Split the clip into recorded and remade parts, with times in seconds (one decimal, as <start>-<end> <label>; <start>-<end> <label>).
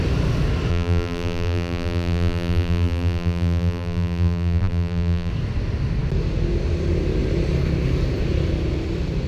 0.0-0.7 recorded; 0.7-5.3 remade; 5.3-9.3 recorded